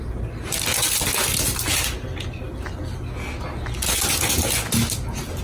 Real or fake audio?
real